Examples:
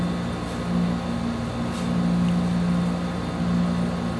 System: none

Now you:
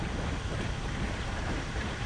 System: vocoder, BigVGAN v2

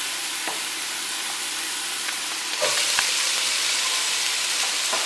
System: vocoder, BigVGAN v2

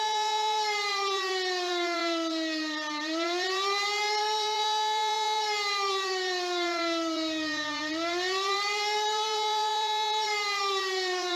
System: vocoder, BigVGAN v2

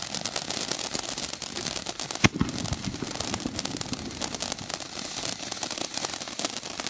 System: none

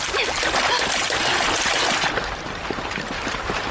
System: none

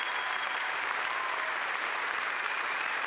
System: vocoder, BigVGAN v2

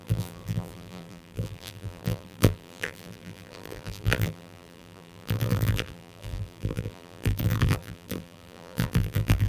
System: vocoder, BigVGAN v2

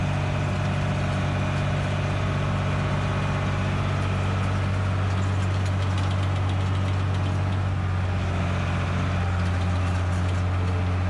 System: none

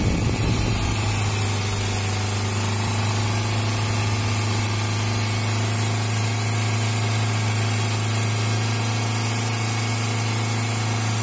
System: none